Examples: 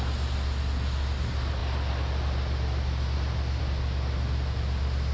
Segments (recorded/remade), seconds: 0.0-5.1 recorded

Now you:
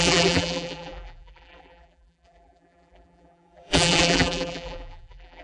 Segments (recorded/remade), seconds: 0.0-5.4 remade

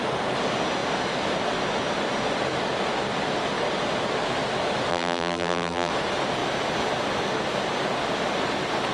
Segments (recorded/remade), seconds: 0.0-4.9 recorded; 4.9-5.9 remade; 5.9-8.9 recorded

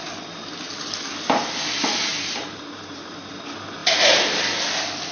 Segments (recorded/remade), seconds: 0.0-2.1 recorded; 2.1-3.3 remade; 3.3-5.1 recorded